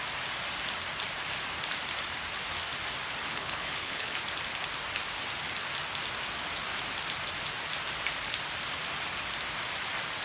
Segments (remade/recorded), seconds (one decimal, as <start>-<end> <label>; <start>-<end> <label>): 0.0-3.2 recorded; 3.2-4.1 remade; 4.1-10.2 recorded